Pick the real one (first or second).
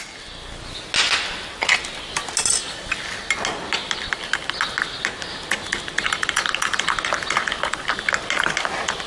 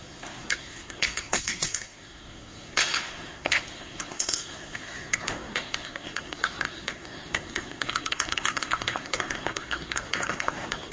first